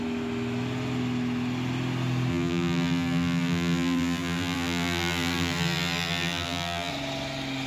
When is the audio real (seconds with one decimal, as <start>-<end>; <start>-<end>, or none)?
0.0-2.3; 6.9-7.7